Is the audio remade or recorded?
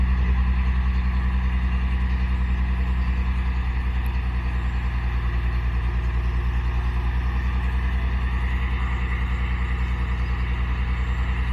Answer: recorded